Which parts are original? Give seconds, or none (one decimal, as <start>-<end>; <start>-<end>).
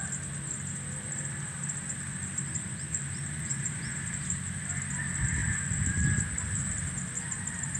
0.0-2.5; 4.1-7.8